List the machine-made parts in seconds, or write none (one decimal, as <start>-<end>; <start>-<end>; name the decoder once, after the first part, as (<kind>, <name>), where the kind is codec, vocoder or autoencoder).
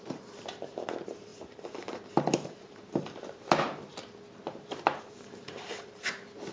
0.0-3.9 (vocoder, BigVGAN v2); 4.4-6.5